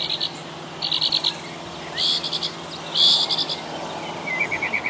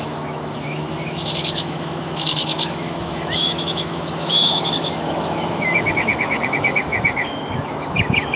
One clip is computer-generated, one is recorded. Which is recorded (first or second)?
first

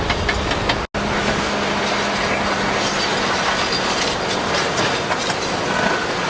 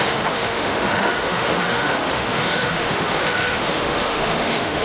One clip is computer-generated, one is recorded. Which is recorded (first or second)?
first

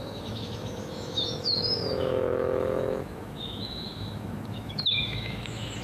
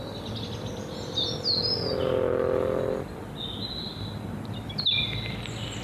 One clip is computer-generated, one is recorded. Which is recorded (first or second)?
second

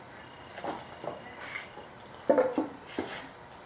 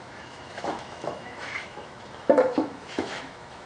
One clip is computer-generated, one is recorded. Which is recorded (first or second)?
first